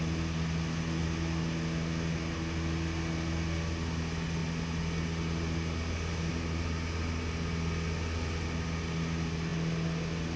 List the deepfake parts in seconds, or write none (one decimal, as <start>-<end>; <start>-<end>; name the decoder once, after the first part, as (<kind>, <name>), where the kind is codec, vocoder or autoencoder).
none